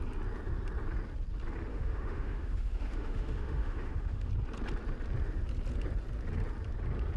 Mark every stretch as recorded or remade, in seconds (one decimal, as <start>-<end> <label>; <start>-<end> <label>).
0.0-1.7 recorded; 1.7-4.3 remade; 4.3-7.2 recorded